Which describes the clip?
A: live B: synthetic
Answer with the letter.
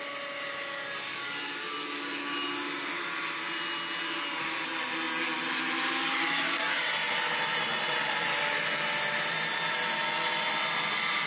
A